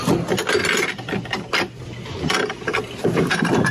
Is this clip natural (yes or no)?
yes